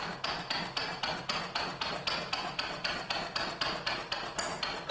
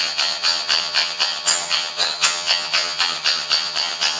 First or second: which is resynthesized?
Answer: second